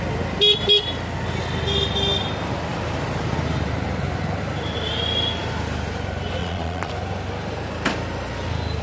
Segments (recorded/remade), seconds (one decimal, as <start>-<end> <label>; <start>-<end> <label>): 0.0-6.4 recorded; 6.4-6.9 remade; 6.9-8.8 recorded